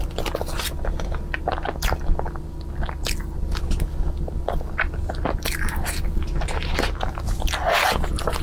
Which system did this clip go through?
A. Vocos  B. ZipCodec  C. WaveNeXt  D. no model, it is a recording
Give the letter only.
D